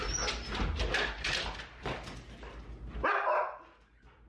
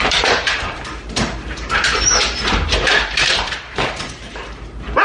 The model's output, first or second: second